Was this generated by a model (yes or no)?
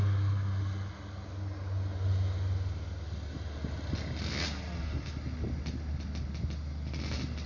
no